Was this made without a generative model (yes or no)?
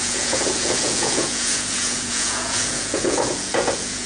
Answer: no